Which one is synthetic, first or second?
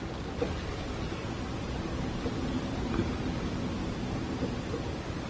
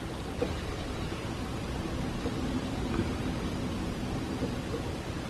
second